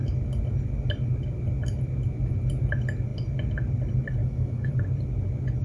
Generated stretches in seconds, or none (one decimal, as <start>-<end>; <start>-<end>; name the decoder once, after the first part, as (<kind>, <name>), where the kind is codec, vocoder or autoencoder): 4.2-4.7 (autoencoder, DAC-VAE)